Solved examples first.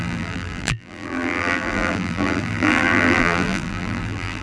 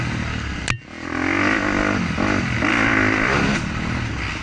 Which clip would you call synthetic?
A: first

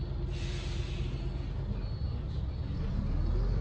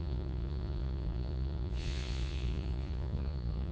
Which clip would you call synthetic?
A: second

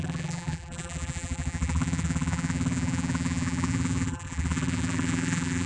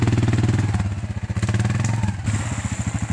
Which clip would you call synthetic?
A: first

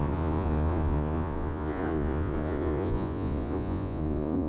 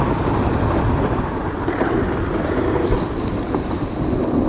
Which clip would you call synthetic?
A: first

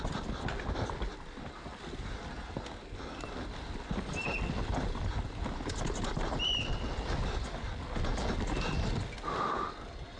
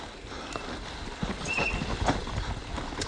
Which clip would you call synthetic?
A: second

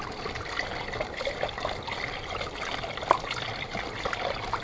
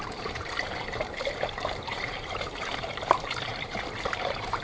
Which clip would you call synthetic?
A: second